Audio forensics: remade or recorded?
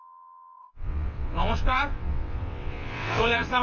remade